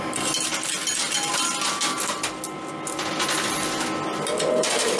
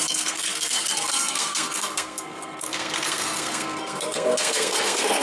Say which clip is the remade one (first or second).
second